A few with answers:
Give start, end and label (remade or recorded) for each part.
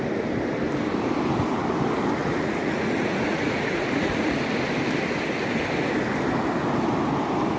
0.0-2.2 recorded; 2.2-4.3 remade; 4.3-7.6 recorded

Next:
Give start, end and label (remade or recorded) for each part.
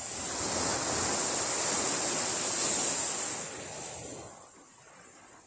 0.0-5.5 recorded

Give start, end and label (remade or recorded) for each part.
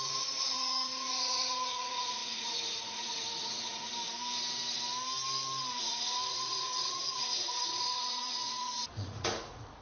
0.0-3.9 remade; 3.9-5.8 recorded; 5.8-9.8 remade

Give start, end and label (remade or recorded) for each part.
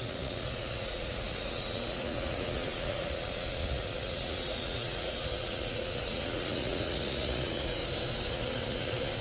0.0-7.8 remade; 7.8-8.3 recorded; 8.3-9.2 remade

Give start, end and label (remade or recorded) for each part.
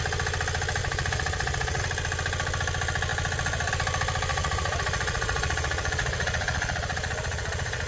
0.0-0.8 recorded; 0.8-1.8 remade; 1.8-4.3 recorded; 4.3-7.9 remade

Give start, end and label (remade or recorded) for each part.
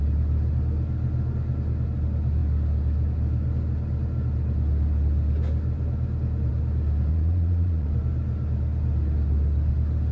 0.0-7.1 recorded; 7.1-7.9 remade; 7.9-10.1 recorded